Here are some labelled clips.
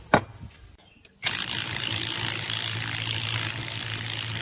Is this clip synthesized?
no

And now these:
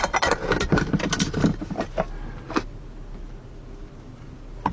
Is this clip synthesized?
no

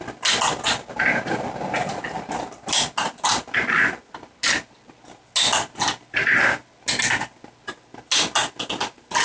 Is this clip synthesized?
no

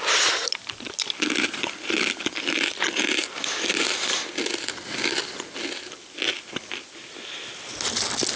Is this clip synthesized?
no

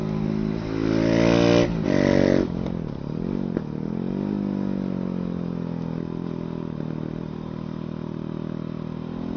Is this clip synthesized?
no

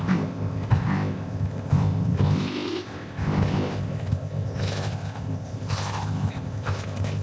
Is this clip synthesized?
yes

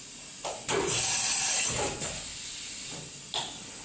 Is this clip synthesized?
no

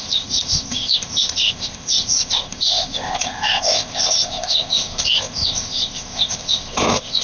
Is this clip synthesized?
yes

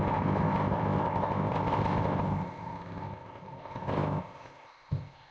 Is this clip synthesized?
yes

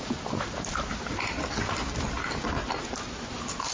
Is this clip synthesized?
no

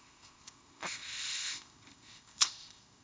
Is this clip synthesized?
yes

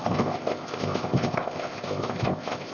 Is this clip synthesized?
yes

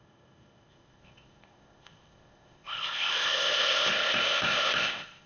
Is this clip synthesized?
yes